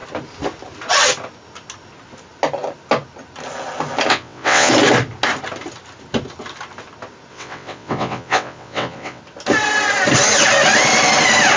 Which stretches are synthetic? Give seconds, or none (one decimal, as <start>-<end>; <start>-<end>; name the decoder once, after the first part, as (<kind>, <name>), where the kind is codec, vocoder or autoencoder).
4.1-4.7 (vocoder, WaveNeXt); 7.3-9.2